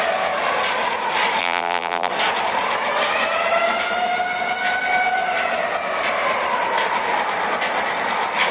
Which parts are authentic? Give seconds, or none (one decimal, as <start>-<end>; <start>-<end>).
0.0-1.4; 2.1-8.5